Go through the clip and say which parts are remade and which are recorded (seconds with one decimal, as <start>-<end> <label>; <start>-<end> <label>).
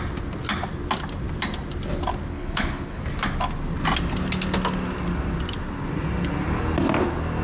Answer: 0.0-2.3 recorded; 2.3-3.0 remade; 3.0-7.4 recorded